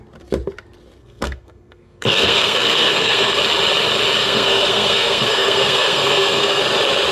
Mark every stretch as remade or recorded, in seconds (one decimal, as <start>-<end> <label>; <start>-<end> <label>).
0.0-1.0 recorded; 1.0-3.4 remade; 3.4-4.2 recorded; 4.2-6.6 remade; 6.6-7.1 recorded